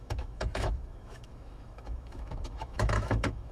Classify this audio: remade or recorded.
remade